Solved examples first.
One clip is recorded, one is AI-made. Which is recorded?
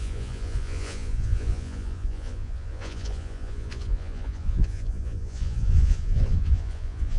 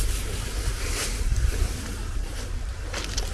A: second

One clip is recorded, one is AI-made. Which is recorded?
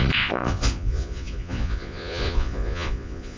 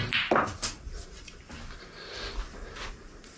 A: second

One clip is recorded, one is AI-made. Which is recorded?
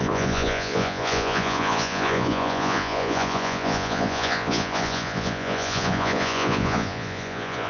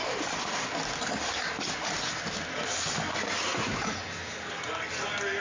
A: second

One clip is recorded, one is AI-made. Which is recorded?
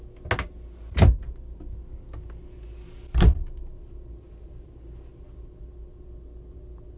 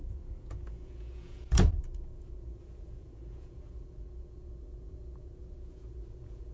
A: first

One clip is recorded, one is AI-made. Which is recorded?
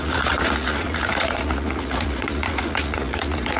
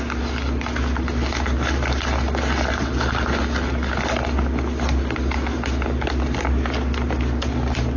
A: second